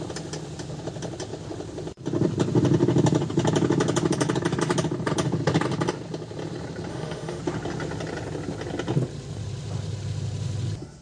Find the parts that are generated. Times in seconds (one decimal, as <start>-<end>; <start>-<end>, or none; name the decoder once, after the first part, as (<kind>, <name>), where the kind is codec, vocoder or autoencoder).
6.9-7.4 (autoencoder, DAC-VAE)